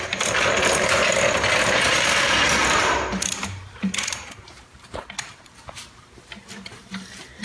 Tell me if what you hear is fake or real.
fake